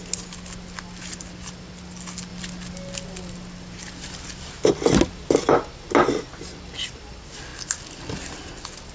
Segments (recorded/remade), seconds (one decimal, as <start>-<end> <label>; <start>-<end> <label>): 0.0-8.9 recorded